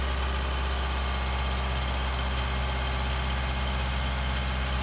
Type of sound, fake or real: real